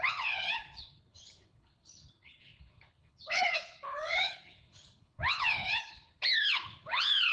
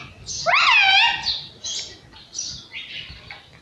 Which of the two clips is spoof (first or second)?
first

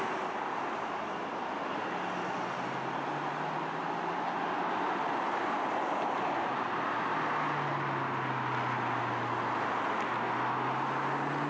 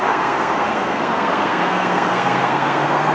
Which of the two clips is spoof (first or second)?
second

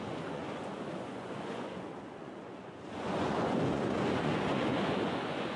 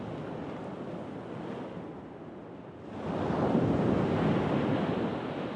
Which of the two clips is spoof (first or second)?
first